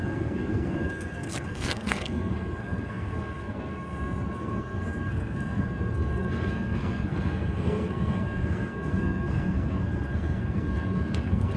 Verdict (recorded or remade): remade